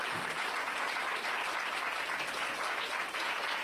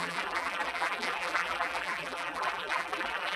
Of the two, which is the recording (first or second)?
first